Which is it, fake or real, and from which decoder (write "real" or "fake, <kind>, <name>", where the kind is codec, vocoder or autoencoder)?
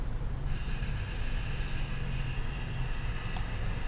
real